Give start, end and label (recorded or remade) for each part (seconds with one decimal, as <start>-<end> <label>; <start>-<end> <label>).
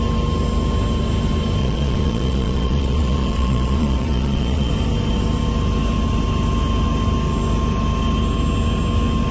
0.0-1.6 recorded; 1.6-4.7 remade; 4.7-9.3 recorded